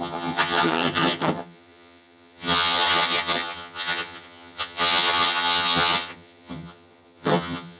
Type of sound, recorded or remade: remade